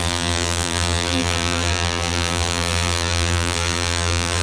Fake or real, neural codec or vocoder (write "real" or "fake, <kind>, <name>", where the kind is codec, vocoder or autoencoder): fake, vocoder, BigVGAN v2